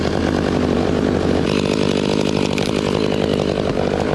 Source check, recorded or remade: remade